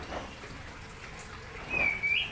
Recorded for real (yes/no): yes